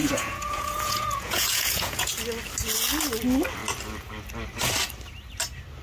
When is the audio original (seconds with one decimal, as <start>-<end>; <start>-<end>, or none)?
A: 2.1-5.8